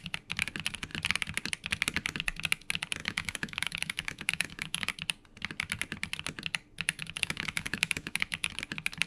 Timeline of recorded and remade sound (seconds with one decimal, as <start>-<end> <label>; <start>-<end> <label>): 0.0-3.0 recorded; 3.0-4.9 remade; 4.9-7.0 recorded; 7.0-8.5 remade; 8.5-9.1 recorded